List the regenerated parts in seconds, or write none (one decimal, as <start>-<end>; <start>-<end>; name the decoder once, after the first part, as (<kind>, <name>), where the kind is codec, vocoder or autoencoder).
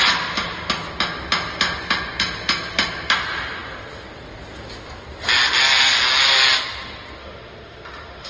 7.2-8.3 (autoencoder, DAC-VAE)